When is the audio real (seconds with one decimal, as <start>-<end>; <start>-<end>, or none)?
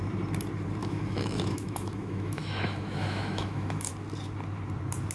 0.0-0.8; 3.9-5.1